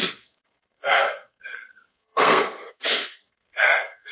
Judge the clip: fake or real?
fake